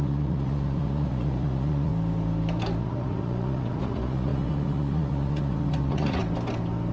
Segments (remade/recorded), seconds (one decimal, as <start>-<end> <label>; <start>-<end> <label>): 0.0-1.9 remade; 1.9-2.8 recorded; 2.8-6.2 remade; 6.2-6.9 recorded

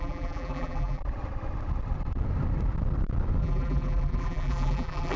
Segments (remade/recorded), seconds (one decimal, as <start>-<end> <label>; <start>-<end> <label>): 0.0-1.0 remade; 1.0-3.4 recorded; 3.4-5.2 remade

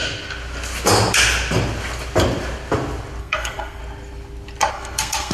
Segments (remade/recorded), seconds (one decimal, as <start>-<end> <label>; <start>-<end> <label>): 0.0-3.2 recorded; 3.2-3.8 remade; 3.8-4.7 recorded; 4.7-5.3 remade

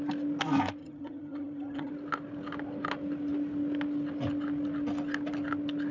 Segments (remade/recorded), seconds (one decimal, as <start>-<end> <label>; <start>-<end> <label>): 0.0-0.8 recorded; 0.8-1.9 remade; 1.9-5.9 recorded